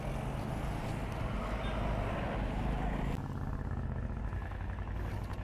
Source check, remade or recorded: recorded